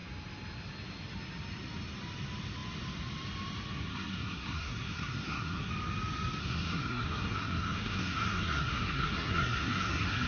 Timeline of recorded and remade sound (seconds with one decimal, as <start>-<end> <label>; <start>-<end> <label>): 0.0-3.9 recorded; 3.9-5.7 remade; 5.7-6.4 recorded; 6.4-10.3 remade